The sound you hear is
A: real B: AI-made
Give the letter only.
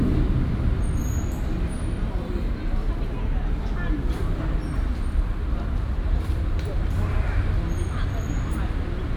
A